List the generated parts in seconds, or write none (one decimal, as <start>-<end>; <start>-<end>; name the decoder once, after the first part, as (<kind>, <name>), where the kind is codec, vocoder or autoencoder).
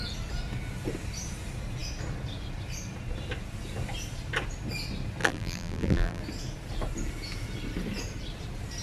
5.2-6.2 (vocoder, BigVGAN v2)